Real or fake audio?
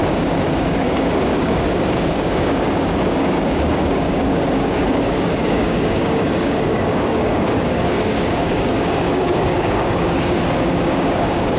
fake